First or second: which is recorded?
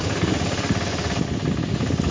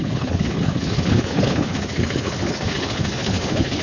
first